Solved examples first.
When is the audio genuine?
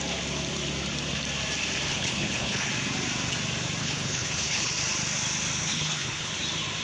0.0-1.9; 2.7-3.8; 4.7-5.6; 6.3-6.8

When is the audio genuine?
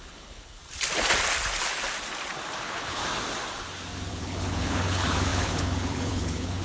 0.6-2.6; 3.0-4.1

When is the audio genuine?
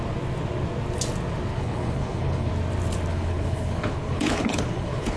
0.0-1.5; 2.5-3.1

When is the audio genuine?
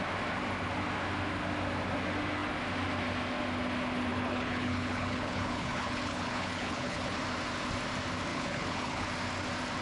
0.0-4.1; 7.2-8.3; 9.1-9.8